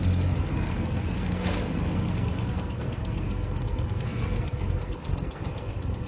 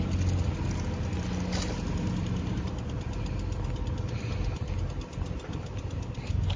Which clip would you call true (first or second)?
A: second